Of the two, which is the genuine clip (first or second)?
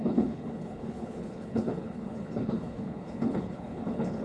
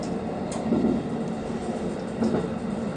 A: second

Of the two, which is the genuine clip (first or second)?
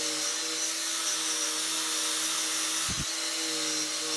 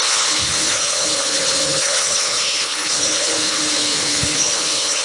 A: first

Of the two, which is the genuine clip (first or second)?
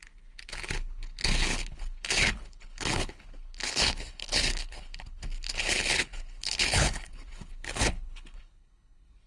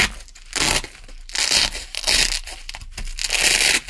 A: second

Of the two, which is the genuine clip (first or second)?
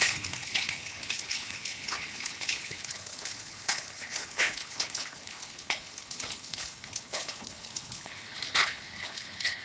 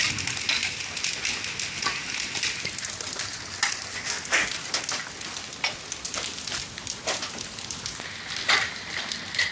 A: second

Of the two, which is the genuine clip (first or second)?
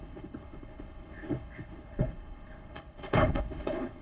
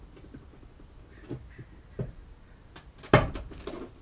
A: second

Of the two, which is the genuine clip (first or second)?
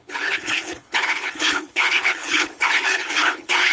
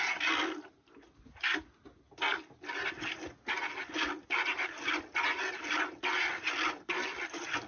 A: second